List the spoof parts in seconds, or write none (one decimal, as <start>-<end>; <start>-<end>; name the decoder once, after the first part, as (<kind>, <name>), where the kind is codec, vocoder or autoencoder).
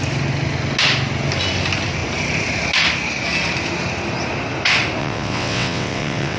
5.0-6.4 (vocoder, WaveNeXt)